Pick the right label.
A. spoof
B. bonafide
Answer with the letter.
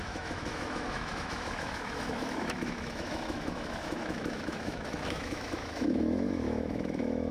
A